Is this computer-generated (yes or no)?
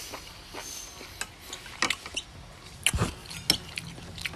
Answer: no